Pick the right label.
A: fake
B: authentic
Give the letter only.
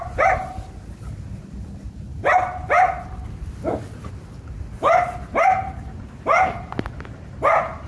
B